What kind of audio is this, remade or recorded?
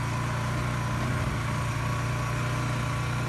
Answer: recorded